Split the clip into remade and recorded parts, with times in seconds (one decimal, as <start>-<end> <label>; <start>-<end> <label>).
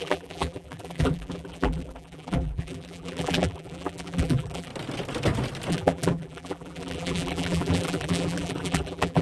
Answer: 0.0-4.7 remade; 4.7-5.7 recorded; 5.7-9.2 remade